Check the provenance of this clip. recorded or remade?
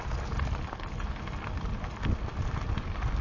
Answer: recorded